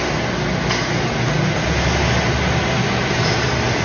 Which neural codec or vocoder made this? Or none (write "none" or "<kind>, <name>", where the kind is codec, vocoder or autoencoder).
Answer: none